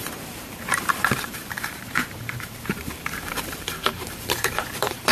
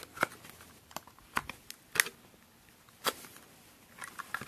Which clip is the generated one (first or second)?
first